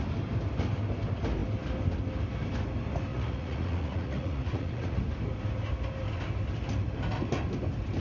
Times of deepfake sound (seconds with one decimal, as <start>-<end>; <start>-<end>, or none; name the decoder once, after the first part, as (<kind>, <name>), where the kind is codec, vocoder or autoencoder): 3.1-5.0 (vocoder, Vocos)